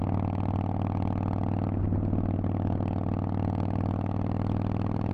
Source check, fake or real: real